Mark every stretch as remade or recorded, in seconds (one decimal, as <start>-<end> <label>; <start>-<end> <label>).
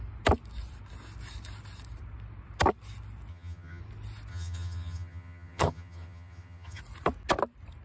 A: 0.0-3.3 recorded; 3.3-3.8 remade; 3.8-4.3 recorded; 4.3-6.8 remade; 6.8-7.8 recorded